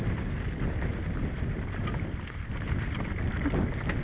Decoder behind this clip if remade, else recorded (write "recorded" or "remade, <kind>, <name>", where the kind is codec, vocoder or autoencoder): recorded